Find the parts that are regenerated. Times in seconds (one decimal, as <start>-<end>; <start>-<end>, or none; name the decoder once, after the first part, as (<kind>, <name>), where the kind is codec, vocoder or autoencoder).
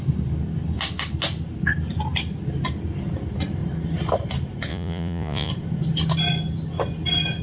4.7-5.5 (vocoder, Vocos)